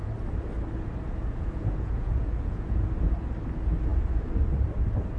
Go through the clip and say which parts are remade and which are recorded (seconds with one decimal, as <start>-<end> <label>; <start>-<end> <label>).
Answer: 0.0-1.2 recorded; 1.2-2.8 remade; 2.8-5.2 recorded